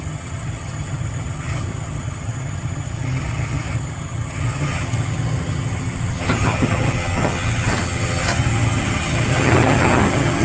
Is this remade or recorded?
remade